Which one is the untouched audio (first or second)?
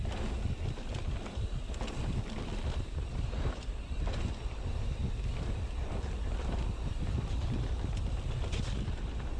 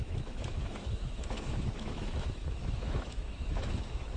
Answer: first